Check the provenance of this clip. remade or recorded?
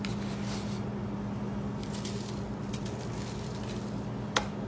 recorded